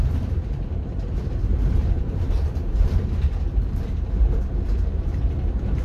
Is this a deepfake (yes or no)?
yes